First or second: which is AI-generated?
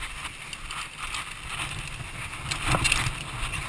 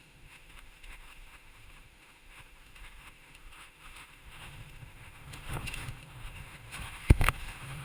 second